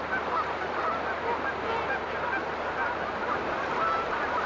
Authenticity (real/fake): real